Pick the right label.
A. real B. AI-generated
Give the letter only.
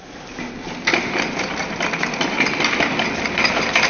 A